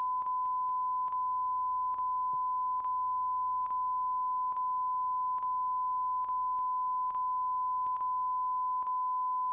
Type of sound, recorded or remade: recorded